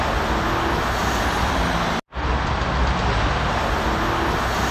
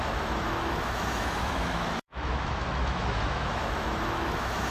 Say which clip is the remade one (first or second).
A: second